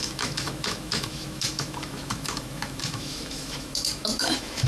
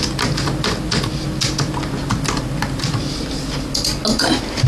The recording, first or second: second